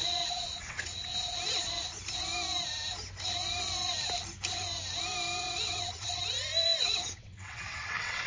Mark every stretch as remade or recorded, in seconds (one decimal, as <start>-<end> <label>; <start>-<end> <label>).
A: 0.0-1.1 remade; 1.1-5.4 recorded; 5.4-6.2 remade; 6.2-6.8 recorded; 6.8-8.3 remade